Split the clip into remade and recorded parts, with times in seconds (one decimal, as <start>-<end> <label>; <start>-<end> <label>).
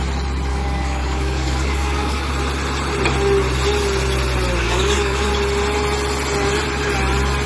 0.0-0.5 recorded; 0.5-2.3 remade; 2.3-4.6 recorded; 4.6-5.3 remade; 5.3-7.5 recorded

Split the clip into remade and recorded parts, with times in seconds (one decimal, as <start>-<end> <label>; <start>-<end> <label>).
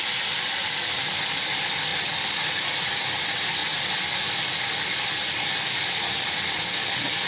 0.0-1.9 recorded; 1.9-2.7 remade; 2.7-7.3 recorded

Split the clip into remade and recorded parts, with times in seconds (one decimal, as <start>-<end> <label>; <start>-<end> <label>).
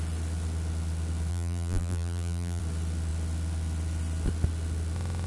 0.0-1.3 recorded; 1.3-2.6 remade; 2.6-5.3 recorded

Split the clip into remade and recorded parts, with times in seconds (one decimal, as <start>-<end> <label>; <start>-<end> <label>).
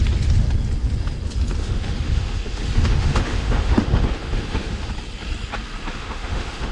0.0-1.6 recorded; 1.6-4.9 remade; 4.9-5.8 recorded; 5.8-6.7 remade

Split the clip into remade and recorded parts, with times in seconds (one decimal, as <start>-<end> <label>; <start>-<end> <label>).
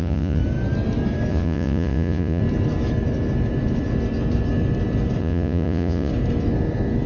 0.0-0.4 remade; 0.4-1.3 recorded; 1.3-2.4 remade; 2.4-5.2 recorded; 5.2-6.1 remade; 6.1-7.1 recorded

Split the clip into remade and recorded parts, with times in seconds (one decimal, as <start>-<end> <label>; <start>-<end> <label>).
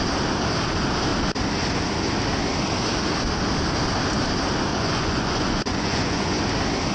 0.0-4.7 recorded; 4.7-6.4 remade; 6.4-6.9 recorded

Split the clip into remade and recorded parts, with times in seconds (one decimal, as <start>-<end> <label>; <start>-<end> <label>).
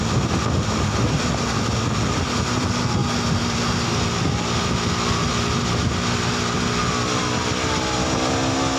0.0-8.8 recorded